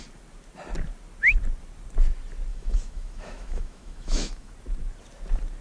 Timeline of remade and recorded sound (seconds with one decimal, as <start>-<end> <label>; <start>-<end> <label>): 0.0-2.5 recorded; 2.5-4.5 remade; 4.5-5.6 recorded